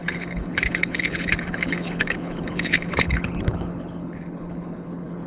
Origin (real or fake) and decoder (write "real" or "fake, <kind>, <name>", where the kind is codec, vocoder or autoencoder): fake, codec, HILCodec